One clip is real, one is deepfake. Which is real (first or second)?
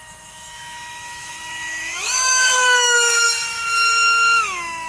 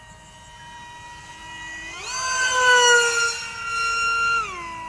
second